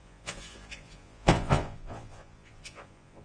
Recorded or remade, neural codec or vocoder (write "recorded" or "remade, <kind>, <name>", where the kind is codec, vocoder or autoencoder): remade, vocoder, Vocos